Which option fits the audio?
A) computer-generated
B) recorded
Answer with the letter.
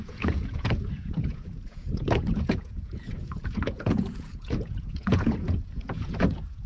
A